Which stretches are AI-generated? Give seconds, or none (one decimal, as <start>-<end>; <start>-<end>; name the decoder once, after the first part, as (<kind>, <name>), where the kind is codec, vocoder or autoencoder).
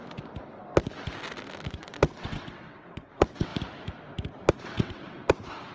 1.7-3.5 (vocoder, WaveNeXt); 4.5-5.7